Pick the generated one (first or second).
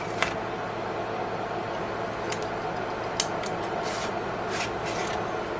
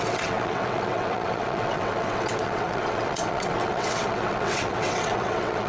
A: second